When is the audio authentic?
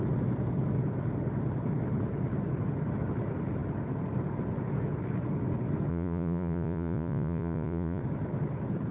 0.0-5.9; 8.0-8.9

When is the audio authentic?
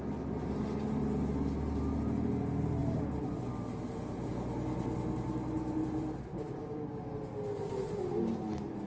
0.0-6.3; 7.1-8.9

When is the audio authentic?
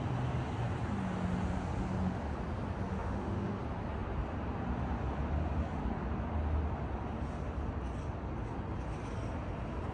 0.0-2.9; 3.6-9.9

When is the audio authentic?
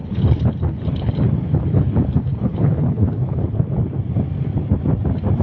1.1-1.5; 3.7-5.4